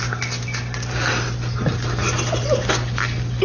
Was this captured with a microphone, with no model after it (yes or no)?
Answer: yes